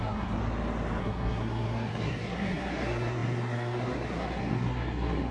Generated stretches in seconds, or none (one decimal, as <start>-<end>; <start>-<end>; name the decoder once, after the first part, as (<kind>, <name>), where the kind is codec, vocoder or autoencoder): 0.0-0.4 (codec, SNAC); 1.0-5.3